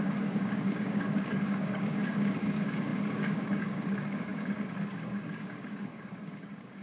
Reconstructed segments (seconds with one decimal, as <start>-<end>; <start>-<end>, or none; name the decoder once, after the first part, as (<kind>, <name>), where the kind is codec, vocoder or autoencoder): 0.0-6.8 (codec, DAC)